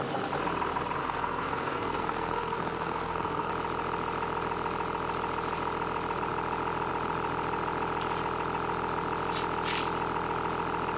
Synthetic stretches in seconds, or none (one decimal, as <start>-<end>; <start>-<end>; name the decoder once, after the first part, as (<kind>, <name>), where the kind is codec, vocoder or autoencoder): 1.0-3.5 (codec, SNAC)